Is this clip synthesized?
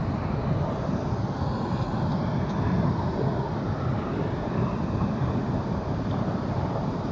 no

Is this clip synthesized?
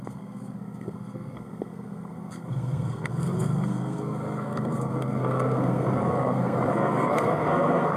yes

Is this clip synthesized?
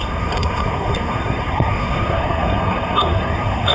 yes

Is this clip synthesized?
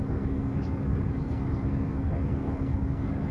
yes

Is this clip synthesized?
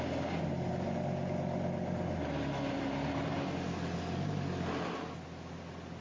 no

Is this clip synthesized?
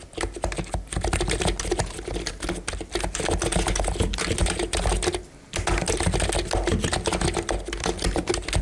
no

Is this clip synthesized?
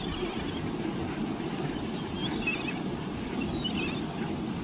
no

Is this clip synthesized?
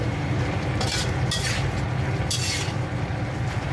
no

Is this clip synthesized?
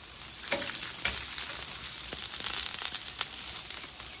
no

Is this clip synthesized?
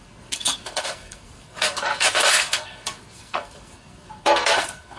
yes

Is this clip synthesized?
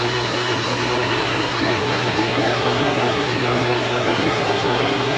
yes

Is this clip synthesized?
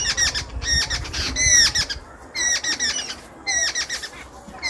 no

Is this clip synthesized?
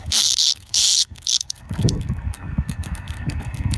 yes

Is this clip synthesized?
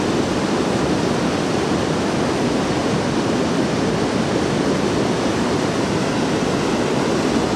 no